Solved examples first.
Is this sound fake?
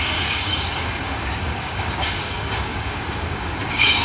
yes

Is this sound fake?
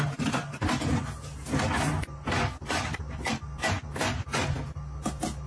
no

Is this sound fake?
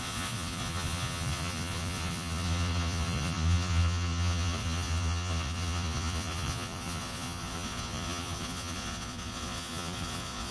yes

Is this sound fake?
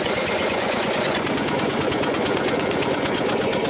yes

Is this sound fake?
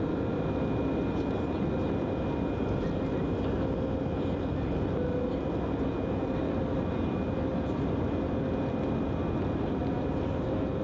no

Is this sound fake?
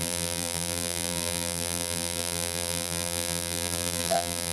yes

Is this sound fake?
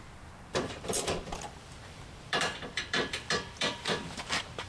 yes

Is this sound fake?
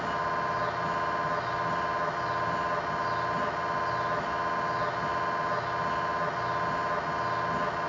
no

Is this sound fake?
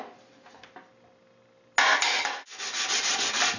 no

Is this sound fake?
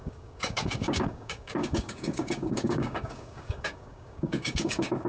yes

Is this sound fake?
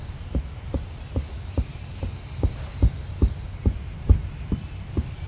no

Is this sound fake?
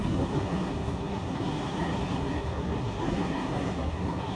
yes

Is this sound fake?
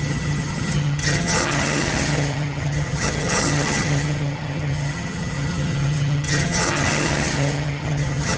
yes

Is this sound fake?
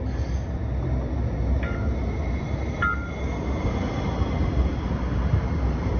no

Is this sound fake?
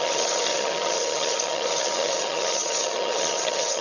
yes